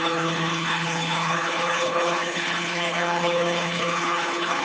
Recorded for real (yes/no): no